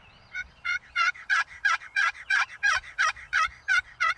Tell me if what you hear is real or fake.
fake